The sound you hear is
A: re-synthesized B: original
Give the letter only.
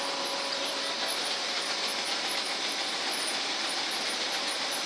B